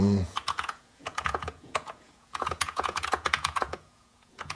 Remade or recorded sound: remade